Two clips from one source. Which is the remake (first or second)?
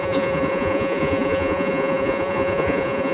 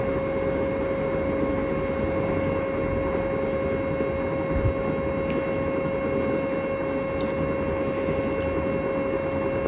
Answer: first